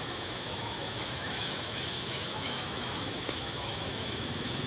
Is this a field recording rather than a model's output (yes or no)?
no